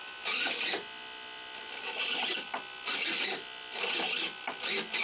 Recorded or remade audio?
recorded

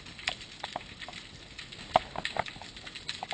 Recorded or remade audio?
recorded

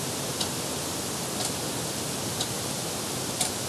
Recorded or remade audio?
recorded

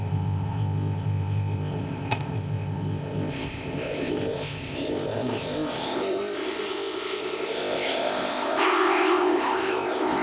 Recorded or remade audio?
remade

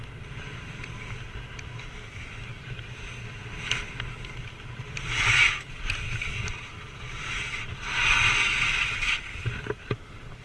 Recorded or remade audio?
recorded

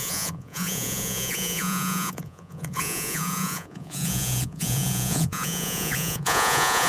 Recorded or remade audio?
remade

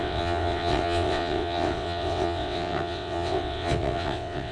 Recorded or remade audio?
remade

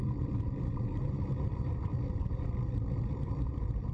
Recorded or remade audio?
remade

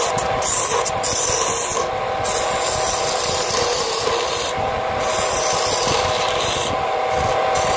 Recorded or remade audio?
recorded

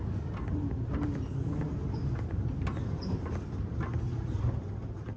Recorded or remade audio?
recorded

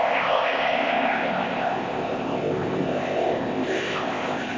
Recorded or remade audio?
remade